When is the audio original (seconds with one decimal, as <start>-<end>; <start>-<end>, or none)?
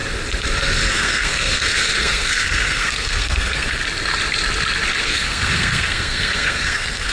0.0-0.9; 3.8-5.0